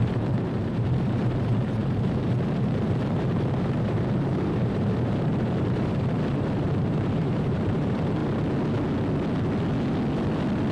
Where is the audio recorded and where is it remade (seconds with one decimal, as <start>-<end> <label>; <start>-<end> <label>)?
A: 0.0-8.2 remade; 8.2-10.7 recorded